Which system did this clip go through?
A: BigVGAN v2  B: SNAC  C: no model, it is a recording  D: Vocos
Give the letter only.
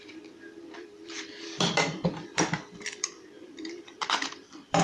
A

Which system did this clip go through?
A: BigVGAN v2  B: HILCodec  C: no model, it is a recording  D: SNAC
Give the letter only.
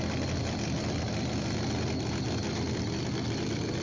C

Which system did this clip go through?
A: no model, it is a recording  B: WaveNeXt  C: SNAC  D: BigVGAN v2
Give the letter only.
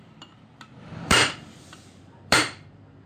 D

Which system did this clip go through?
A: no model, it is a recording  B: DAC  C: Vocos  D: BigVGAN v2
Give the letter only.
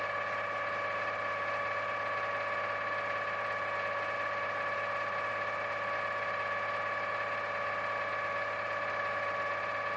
A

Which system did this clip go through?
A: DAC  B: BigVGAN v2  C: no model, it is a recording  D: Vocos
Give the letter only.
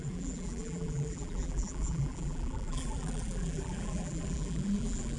B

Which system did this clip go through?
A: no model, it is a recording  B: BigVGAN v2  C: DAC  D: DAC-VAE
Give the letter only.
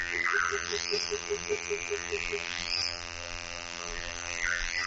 B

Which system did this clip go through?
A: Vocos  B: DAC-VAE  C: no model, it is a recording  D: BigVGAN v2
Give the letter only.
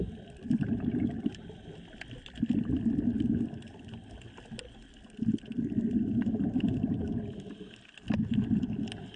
C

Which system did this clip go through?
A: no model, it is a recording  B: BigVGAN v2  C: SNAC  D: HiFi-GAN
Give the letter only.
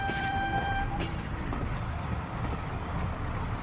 B